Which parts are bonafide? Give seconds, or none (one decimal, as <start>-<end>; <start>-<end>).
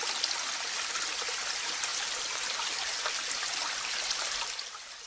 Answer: 0.0-5.1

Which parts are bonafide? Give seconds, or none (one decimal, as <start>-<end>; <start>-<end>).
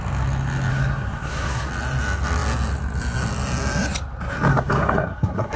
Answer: 0.0-0.7; 1.7-4.5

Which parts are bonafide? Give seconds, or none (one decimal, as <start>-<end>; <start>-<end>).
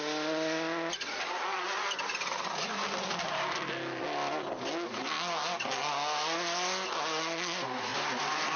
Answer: 0.0-8.6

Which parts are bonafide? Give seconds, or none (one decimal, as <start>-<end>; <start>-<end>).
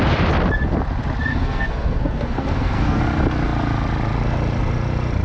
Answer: 0.0-1.3; 3.0-5.2